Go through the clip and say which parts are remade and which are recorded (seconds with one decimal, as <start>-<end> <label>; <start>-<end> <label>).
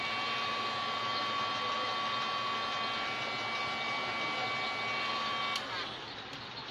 0.0-6.7 recorded